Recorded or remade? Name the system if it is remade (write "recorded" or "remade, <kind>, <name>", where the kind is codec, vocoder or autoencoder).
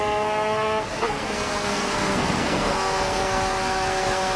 remade, codec, SNAC